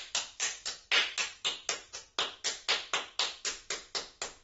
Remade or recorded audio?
recorded